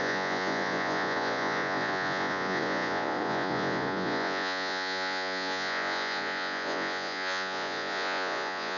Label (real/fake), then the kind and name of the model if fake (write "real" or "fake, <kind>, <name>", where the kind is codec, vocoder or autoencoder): fake, vocoder, Vocos